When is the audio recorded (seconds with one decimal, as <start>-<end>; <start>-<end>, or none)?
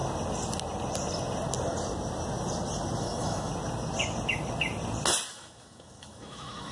0.0-3.0; 3.5-5.3